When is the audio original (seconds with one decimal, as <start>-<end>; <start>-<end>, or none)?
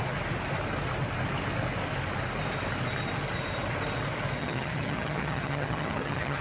0.0-4.4